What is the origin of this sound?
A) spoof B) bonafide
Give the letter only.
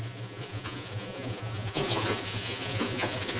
A